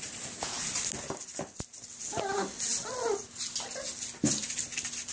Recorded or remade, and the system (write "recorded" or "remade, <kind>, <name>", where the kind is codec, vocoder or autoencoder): recorded